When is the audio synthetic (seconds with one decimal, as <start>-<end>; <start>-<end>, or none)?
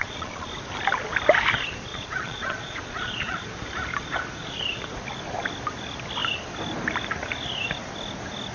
0.0-0.5; 1.9-3.4